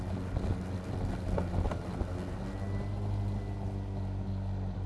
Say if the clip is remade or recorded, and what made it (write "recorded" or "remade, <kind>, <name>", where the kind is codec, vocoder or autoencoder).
recorded